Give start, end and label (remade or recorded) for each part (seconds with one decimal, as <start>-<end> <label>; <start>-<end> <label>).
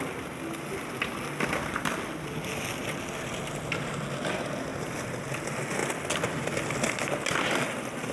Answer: 0.0-8.1 recorded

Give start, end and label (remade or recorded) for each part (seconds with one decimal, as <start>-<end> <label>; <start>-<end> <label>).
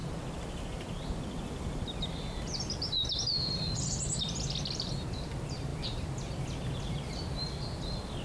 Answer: 0.0-4.9 remade; 4.9-5.7 recorded; 5.7-6.4 remade; 6.4-8.2 recorded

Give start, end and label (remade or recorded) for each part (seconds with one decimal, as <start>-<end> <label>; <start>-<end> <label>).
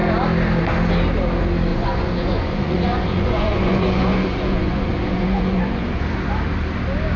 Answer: 0.0-1.7 recorded; 1.7-6.0 remade; 6.0-7.2 recorded